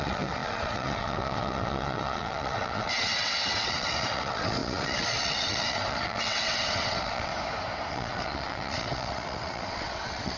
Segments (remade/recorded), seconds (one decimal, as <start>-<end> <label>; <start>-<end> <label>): 0.0-7.3 remade; 7.3-7.9 recorded; 7.9-10.4 remade